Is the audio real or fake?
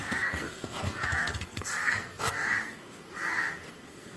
fake